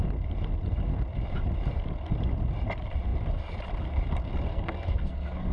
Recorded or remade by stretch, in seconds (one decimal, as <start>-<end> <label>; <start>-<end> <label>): 0.0-4.5 recorded; 4.5-5.5 remade